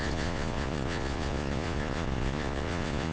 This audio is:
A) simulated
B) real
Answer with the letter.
A